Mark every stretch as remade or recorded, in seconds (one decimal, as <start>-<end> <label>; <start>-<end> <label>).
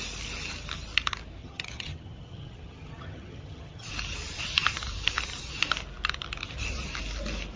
0.0-1.4 recorded; 1.4-3.9 remade; 3.9-7.6 recorded